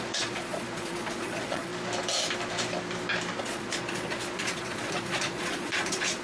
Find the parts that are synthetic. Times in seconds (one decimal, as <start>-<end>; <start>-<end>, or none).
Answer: 0.0-1.7; 3.4-6.2